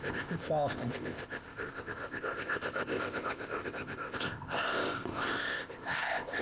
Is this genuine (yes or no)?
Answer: no